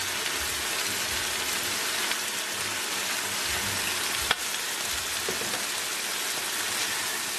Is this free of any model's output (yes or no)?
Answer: yes